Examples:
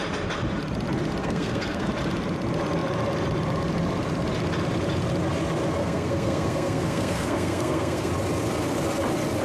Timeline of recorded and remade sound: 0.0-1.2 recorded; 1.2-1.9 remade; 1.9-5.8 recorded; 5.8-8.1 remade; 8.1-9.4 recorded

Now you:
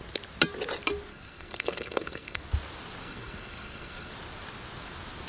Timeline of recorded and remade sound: 0.0-1.1 recorded; 1.1-2.4 remade; 2.4-3.0 recorded; 3.0-4.1 remade; 4.1-5.3 recorded

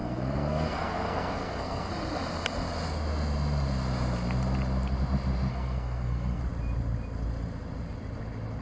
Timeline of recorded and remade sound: 0.0-1.9 remade; 1.9-5.5 recorded; 5.5-6.4 remade; 6.4-8.6 recorded

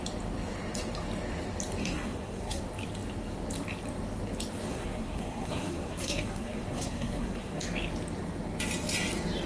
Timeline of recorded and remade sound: 0.0-1.8 recorded; 1.8-2.6 remade; 2.6-4.7 recorded; 4.7-7.6 remade; 7.6-9.5 recorded

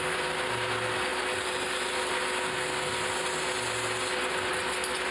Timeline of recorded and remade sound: 0.0-5.1 recorded

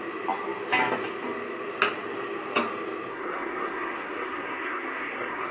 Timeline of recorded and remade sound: 0.0-3.1 recorded; 3.1-5.5 remade

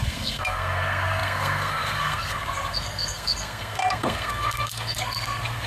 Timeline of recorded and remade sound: 0.0-5.7 remade